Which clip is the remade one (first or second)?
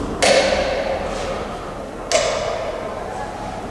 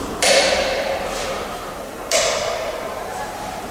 second